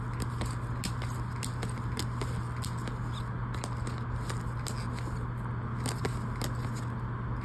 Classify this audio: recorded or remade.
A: recorded